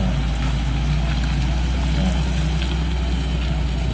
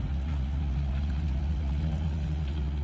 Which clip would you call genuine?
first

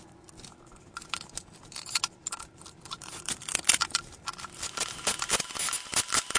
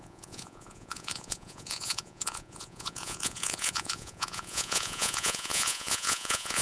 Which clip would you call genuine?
first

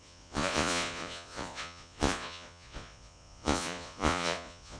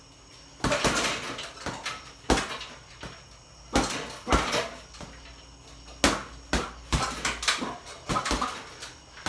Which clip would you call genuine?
second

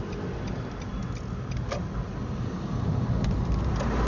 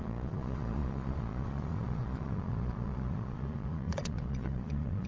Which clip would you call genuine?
first